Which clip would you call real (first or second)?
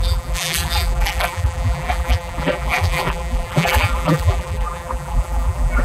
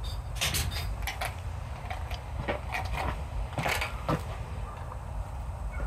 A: second